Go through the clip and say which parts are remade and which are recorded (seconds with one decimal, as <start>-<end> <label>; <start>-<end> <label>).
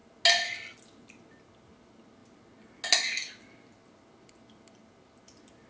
0.0-5.7 recorded